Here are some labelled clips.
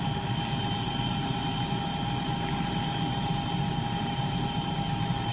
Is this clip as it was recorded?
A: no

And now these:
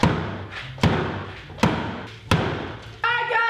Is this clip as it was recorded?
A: yes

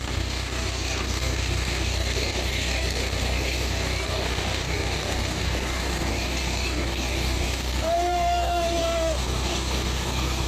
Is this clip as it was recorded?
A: no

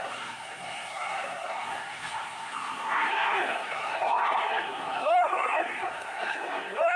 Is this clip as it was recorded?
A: no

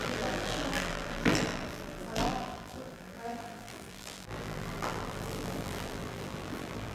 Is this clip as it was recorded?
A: no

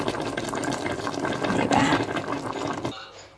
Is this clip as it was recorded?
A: yes